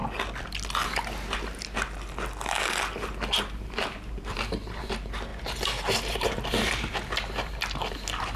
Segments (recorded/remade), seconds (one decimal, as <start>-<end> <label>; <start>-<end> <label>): 0.0-3.4 recorded; 3.4-8.4 remade